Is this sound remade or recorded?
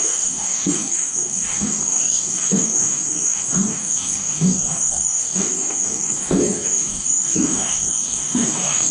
remade